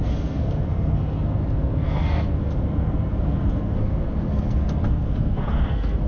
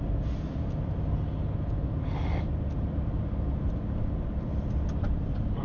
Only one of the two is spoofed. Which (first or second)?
first